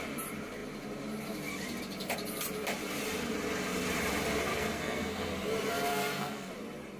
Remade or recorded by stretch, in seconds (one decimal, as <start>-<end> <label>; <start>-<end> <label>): 0.0-4.5 recorded; 4.5-5.3 remade; 5.3-5.9 recorded; 5.9-6.5 remade; 6.5-7.0 recorded